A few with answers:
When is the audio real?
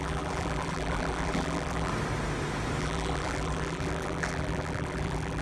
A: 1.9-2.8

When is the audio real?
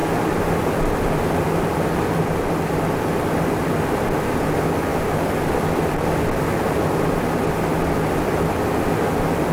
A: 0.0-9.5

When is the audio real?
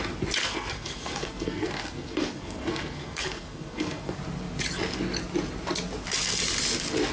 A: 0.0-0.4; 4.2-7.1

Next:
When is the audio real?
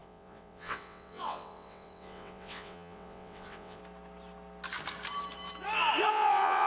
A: 3.8-6.1